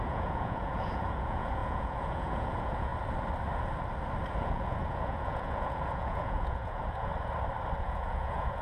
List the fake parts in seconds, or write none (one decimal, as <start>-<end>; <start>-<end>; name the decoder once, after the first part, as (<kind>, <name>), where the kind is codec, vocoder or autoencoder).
0.0-2.9 (vocoder, Vocos); 4.4-7.1; 7.8-8.6